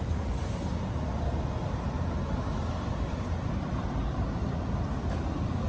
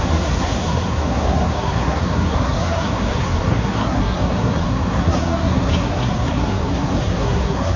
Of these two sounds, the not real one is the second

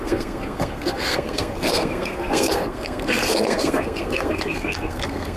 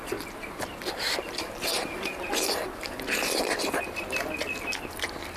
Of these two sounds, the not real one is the first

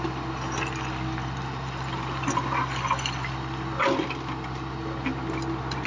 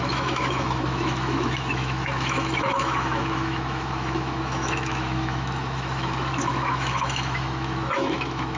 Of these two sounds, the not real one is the second